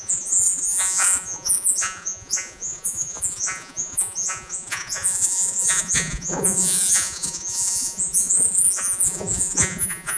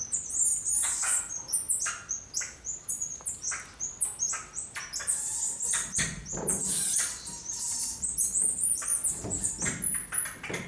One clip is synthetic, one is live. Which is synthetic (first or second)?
first